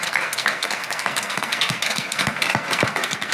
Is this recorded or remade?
remade